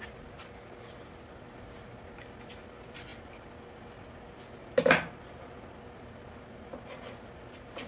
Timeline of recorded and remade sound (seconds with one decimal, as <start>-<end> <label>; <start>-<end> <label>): 0.0-7.9 recorded